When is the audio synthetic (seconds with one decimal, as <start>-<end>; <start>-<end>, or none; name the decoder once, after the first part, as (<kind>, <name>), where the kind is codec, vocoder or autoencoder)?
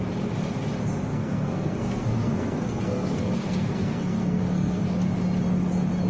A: 1.1-4.8 (codec, SNAC)